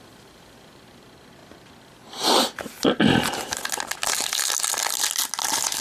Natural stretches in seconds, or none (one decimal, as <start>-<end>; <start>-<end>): 0.0-5.8